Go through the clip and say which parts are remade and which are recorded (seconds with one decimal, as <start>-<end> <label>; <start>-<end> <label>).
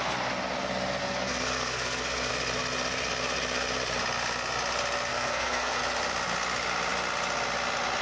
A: 0.0-1.0 recorded; 1.0-2.3 remade; 2.3-5.1 recorded; 5.1-5.8 remade; 5.8-8.0 recorded